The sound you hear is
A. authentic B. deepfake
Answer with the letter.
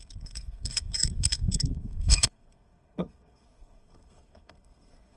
B